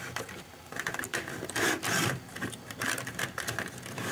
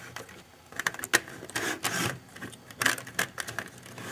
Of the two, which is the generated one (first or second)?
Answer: first